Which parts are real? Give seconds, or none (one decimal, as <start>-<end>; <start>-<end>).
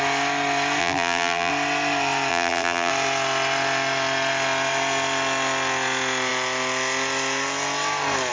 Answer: 0.0-0.8; 1.5-2.3; 2.9-8.3